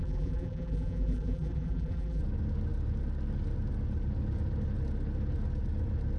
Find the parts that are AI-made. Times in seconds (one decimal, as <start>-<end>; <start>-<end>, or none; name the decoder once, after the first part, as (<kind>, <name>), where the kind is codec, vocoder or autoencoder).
0.0-2.2 (vocoder, BigVGAN v2)